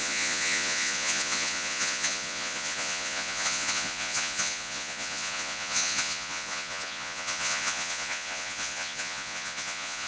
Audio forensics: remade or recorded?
remade